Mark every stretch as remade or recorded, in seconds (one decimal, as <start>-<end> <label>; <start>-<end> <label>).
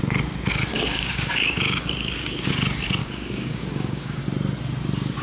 0.0-0.7 recorded; 0.7-2.5 remade; 2.5-3.0 recorded; 3.0-4.2 remade; 4.2-5.2 recorded